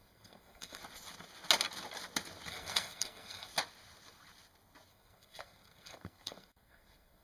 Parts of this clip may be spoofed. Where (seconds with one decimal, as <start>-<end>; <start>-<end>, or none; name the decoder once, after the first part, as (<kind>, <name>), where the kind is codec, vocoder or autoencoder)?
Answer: 0.0-0.8 (codec, SNAC); 2.5-3.5; 4.9-7.2